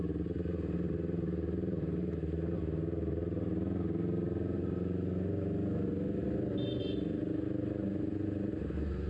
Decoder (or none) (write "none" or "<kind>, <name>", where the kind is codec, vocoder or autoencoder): none